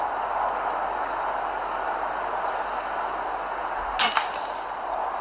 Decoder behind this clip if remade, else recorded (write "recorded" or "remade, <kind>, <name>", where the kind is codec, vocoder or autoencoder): recorded